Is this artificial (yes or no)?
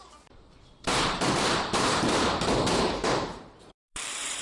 yes